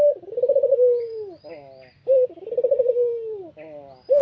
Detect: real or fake fake